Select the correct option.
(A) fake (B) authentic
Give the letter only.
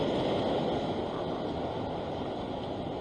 B